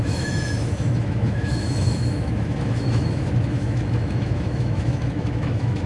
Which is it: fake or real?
fake